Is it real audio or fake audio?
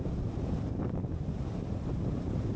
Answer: real